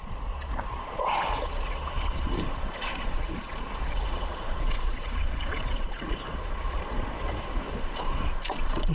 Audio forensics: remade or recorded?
remade